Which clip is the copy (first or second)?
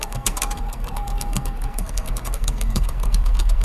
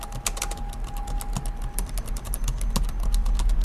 first